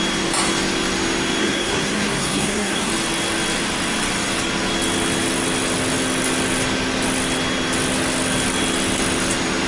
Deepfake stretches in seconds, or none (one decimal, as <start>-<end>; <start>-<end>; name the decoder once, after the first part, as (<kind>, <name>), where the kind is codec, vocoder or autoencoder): 1.4-2.9 (codec, SNAC)